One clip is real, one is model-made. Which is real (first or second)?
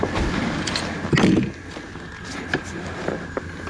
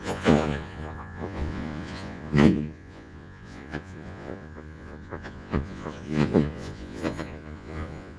first